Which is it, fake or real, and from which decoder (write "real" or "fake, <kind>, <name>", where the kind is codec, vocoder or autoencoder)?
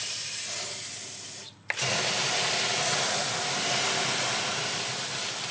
real